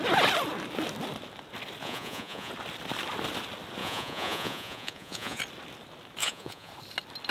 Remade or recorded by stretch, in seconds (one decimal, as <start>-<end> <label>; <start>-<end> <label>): 0.0-1.8 recorded; 1.8-2.5 remade; 2.5-3.8 recorded; 3.8-5.4 remade; 5.4-6.2 recorded; 6.2-6.7 remade; 6.7-7.3 recorded